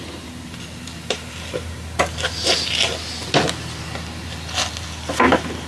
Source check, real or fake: real